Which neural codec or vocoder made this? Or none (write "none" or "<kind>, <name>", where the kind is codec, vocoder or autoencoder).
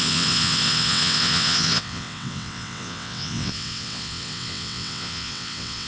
vocoder, WaveNeXt